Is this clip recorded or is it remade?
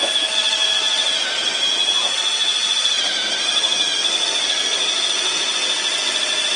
recorded